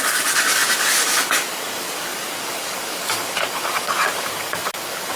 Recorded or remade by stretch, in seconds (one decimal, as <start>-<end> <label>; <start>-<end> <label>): 0.0-5.2 remade